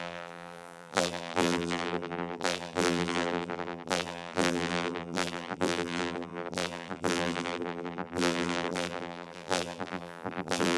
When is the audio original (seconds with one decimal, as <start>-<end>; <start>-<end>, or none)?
none